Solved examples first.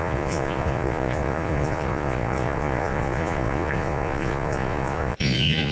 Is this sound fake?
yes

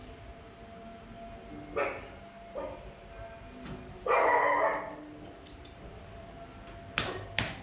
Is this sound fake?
no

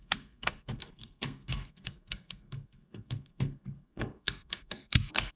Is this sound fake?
yes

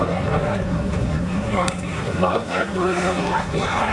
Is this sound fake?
yes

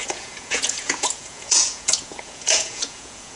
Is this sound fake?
yes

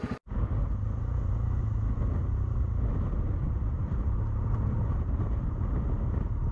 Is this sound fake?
no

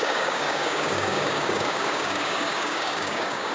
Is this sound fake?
yes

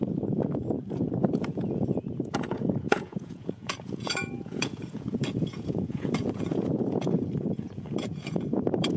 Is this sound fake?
yes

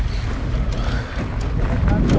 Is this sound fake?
no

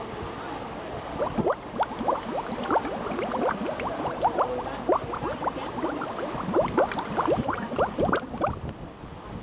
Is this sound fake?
no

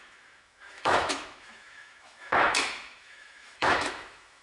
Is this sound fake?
yes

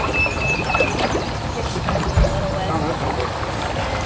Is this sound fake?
no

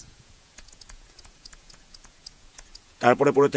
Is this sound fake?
yes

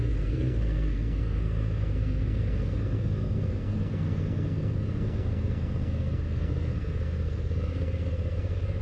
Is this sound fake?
yes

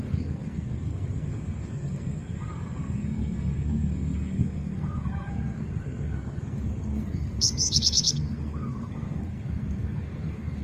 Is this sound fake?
yes